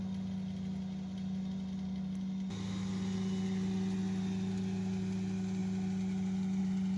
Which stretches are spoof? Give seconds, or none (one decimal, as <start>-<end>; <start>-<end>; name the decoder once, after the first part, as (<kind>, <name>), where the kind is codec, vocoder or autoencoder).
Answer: none